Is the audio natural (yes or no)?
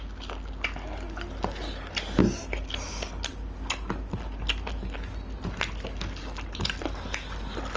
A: yes